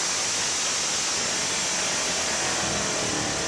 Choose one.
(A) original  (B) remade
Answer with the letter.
A